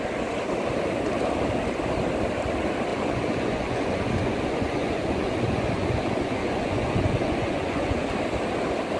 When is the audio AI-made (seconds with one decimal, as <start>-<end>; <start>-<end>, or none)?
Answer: 2.9-8.1